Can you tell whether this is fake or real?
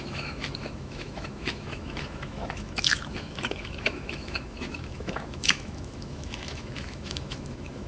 fake